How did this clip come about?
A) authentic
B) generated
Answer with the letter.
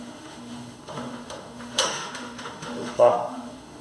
B